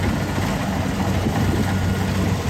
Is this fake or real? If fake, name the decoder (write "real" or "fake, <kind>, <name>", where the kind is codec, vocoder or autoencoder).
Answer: real